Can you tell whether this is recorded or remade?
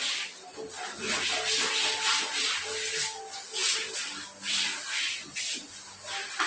recorded